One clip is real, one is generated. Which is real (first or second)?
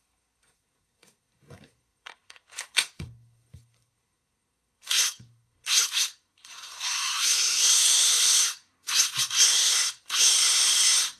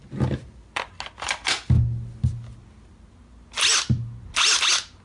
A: second